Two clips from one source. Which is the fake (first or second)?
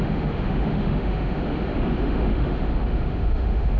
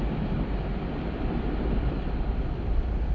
first